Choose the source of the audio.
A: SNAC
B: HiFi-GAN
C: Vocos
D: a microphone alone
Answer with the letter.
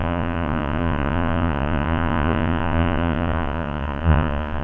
C